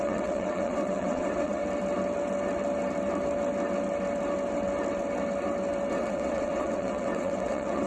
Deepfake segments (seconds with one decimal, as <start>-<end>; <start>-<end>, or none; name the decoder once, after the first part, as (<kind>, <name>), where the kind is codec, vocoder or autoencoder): 0.0-1.6 (vocoder, WaveNeXt); 5.9-7.9